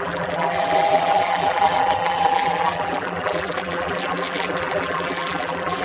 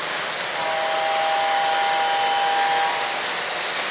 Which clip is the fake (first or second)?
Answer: first